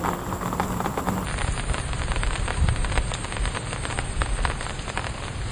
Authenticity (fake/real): fake